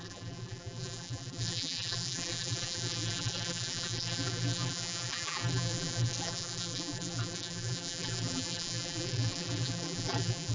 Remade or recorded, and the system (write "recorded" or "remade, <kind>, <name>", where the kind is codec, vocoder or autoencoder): remade, vocoder, BigVGAN v2